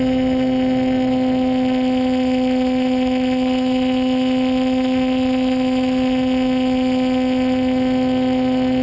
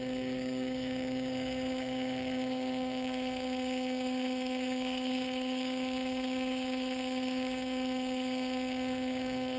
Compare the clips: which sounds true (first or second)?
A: first